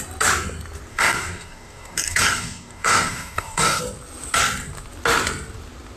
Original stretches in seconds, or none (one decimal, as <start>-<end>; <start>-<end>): 0.0-0.9; 3.8-6.0